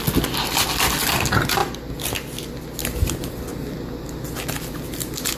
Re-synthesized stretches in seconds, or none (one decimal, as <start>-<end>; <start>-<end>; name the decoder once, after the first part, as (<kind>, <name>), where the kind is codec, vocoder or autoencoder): none